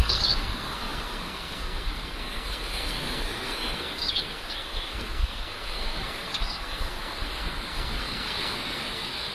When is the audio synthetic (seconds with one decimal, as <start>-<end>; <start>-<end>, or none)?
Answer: 0.0-9.3